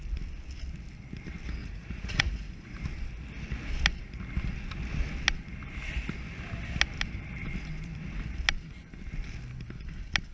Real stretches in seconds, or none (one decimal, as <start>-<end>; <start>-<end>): 0.0-1.6; 2.8-10.3